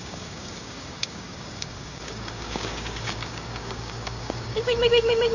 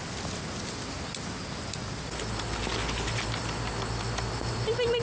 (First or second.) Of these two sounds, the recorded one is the second